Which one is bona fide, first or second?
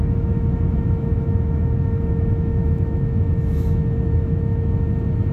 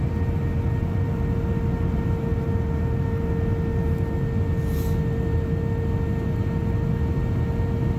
second